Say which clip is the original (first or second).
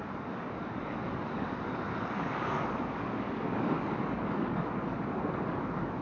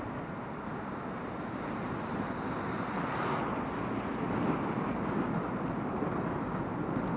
second